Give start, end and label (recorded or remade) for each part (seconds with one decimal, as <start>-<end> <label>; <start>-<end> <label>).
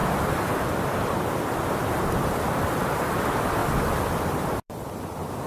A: 0.0-3.6 remade; 3.6-4.2 recorded; 4.2-5.5 remade